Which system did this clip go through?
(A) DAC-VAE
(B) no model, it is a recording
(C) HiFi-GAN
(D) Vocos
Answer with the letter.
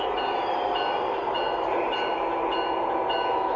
B